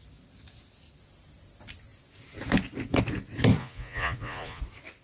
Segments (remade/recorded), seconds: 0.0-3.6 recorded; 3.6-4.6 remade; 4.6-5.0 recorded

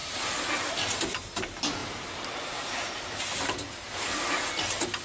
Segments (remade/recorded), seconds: 0.0-0.7 remade; 0.7-1.8 recorded; 1.8-4.4 remade; 4.4-5.0 recorded

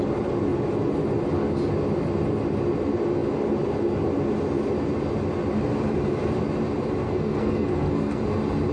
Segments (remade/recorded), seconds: 0.0-7.0 recorded; 7.0-8.2 remade; 8.2-8.7 recorded

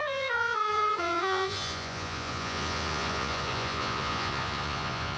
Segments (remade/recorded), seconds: 0.0-5.2 remade

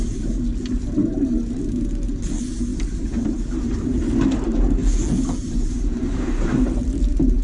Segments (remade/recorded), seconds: 0.0-0.5 remade; 0.5-1.1 recorded; 1.1-4.8 remade; 4.8-5.4 recorded; 5.4-7.4 remade